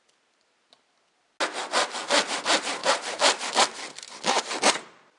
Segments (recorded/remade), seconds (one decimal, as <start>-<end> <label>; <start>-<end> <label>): 0.0-5.2 recorded